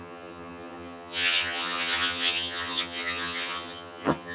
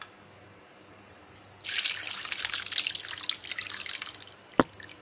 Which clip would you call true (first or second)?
second